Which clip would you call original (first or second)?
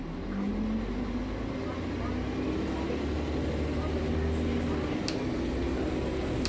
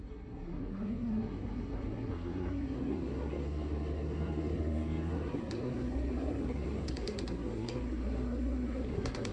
first